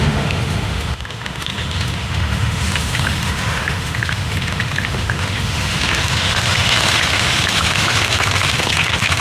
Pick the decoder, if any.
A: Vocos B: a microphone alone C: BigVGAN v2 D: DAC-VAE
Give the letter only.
D